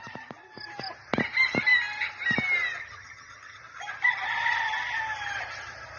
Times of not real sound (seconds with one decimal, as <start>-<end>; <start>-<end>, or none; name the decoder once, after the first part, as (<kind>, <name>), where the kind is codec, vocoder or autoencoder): 2.8-3.6 (vocoder, HiFi-GAN)